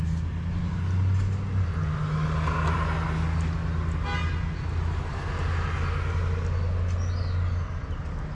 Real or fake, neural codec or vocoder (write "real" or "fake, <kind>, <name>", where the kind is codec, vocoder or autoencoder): real